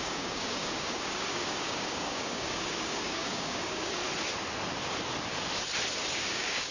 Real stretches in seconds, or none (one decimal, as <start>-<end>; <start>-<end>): 4.0-6.1